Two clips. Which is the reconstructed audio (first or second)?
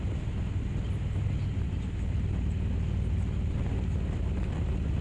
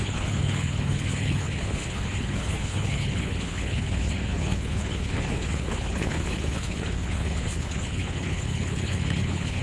second